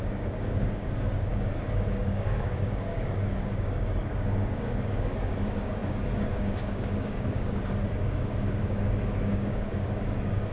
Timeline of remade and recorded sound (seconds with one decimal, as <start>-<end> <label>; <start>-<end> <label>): 0.0-10.5 remade